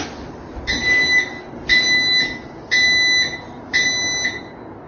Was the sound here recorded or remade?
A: recorded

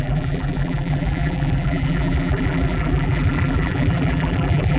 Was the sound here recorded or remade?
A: remade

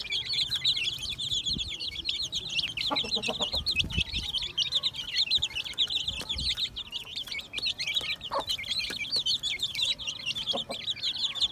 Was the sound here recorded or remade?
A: remade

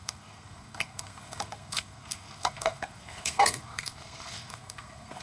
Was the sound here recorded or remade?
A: remade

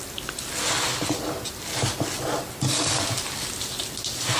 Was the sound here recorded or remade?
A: recorded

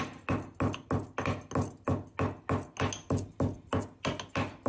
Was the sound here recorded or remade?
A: recorded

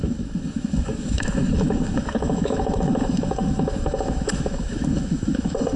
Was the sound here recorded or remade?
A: remade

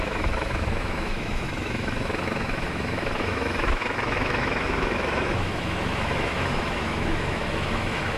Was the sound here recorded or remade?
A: remade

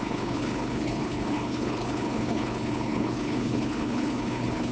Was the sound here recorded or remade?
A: remade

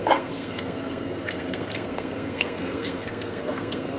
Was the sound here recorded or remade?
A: remade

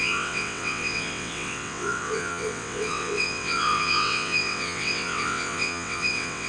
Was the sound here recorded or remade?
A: remade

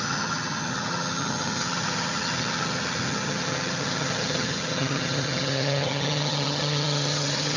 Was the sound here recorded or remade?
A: remade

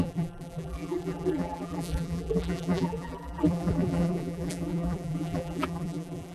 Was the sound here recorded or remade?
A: remade